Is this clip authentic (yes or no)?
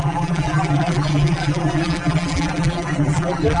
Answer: no